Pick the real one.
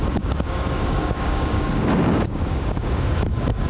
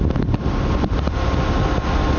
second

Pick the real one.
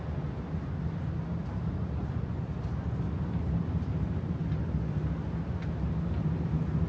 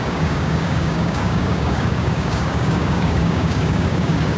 first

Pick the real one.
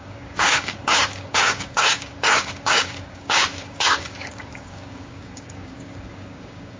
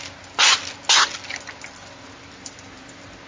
second